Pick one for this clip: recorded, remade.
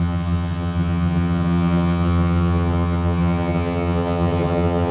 remade